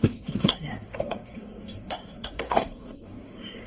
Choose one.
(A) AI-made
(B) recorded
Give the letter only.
A